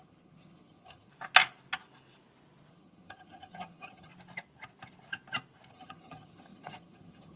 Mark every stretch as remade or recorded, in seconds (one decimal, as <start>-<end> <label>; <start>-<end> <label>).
0.0-1.1 remade; 1.1-2.7 recorded; 2.7-4.1 remade; 4.1-5.7 recorded; 5.7-7.4 remade